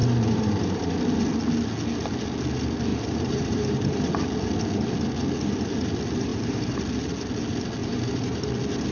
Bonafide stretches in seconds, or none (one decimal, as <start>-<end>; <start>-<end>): 0.9-2.9; 4.1-6.3; 6.8-7.8; 8.5-8.9